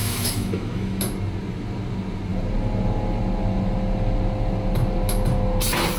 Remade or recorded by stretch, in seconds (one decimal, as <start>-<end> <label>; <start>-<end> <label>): 0.0-1.0 remade; 1.0-6.0 recorded